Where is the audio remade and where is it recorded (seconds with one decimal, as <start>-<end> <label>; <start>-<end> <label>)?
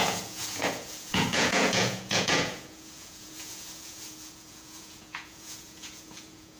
0.0-6.6 remade